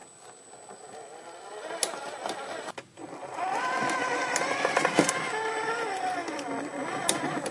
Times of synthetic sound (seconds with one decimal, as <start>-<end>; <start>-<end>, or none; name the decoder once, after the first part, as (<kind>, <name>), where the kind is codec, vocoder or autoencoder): none